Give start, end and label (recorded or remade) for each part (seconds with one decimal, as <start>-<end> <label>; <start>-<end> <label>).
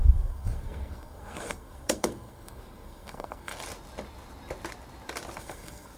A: 0.0-3.5 remade; 3.5-5.4 recorded; 5.4-6.0 remade